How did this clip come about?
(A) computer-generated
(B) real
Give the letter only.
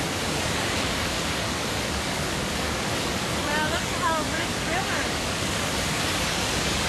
A